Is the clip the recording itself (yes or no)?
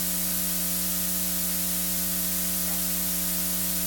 yes